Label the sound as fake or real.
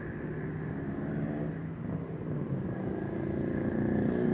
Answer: real